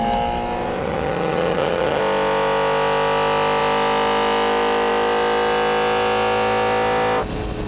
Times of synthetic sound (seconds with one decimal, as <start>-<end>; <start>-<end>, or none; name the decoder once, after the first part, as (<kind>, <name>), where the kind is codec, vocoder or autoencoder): 0.8-2.0 (vocoder, HiFi-GAN)